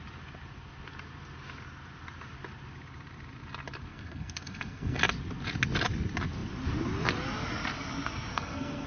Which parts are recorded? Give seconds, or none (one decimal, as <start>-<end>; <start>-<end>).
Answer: 0.0-3.9; 5.0-8.3